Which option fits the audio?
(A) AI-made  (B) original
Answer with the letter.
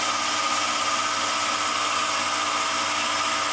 B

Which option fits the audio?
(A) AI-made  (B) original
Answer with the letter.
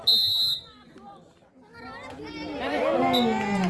B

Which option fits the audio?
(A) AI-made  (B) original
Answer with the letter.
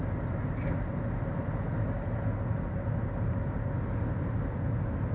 B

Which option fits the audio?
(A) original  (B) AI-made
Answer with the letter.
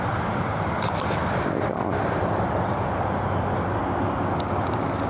A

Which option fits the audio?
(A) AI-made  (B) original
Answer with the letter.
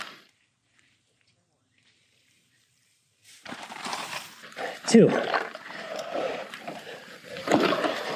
A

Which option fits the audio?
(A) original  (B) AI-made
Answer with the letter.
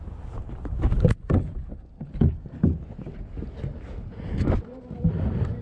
A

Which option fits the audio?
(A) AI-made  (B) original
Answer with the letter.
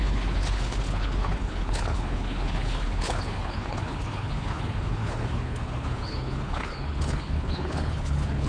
A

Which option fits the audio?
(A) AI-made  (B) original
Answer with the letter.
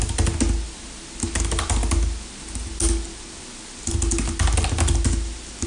B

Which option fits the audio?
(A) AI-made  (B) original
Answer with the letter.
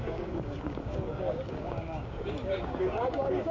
A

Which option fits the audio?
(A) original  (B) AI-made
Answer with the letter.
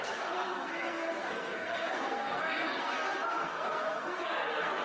B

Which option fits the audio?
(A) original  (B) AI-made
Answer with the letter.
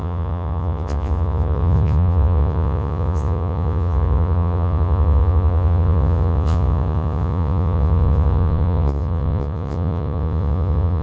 B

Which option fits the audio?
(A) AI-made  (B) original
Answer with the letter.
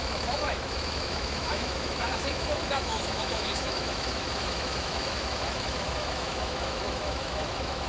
A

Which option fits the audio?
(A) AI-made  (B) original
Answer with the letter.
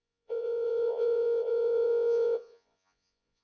A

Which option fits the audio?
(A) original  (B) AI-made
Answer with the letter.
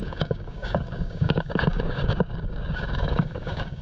B